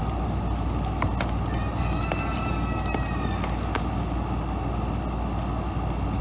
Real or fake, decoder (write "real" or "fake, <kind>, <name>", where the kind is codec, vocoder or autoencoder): real